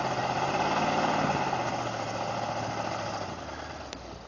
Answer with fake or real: real